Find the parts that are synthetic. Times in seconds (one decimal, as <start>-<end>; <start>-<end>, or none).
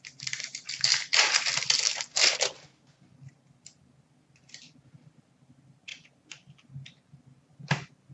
none